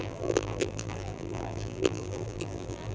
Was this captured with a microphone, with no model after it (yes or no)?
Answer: no